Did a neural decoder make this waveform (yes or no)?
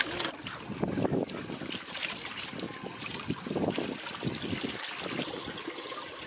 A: no